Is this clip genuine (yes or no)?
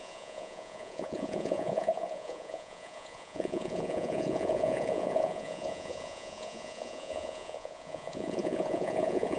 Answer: no